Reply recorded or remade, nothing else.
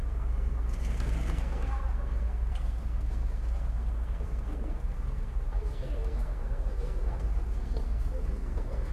remade